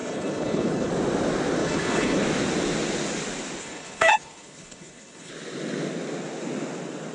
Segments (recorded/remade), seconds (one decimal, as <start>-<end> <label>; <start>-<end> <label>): 0.0-0.9 remade; 0.9-1.6 recorded; 1.6-2.2 remade; 2.2-3.6 recorded; 3.6-5.3 remade; 5.3-7.1 recorded

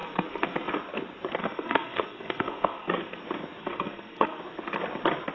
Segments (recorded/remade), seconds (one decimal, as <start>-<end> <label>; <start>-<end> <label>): 0.0-0.7 remade; 0.7-1.4 recorded; 1.4-3.2 remade; 3.2-3.6 recorded; 3.6-4.4 remade; 4.4-5.3 recorded